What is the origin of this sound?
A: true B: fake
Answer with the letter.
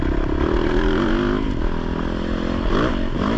A